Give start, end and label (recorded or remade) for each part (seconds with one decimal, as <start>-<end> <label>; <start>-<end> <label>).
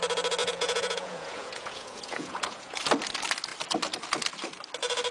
0.0-0.4 recorded; 0.4-2.8 remade; 2.8-5.1 recorded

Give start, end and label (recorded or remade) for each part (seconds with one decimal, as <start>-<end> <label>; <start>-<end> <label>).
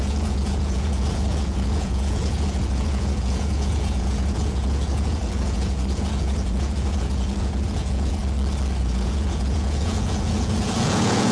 0.0-8.2 remade; 8.2-8.8 recorded; 8.8-11.3 remade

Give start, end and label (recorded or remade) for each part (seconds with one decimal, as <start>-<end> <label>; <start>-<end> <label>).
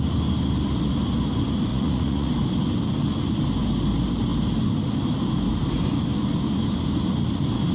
0.0-1.7 recorded; 1.7-2.3 remade; 2.3-7.7 recorded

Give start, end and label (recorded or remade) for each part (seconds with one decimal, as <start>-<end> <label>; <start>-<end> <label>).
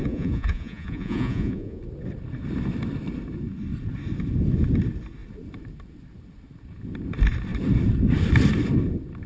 0.0-1.8 remade; 1.8-9.3 recorded